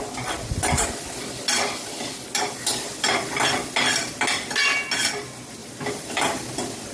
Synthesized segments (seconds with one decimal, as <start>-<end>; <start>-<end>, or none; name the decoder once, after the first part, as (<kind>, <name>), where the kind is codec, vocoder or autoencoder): none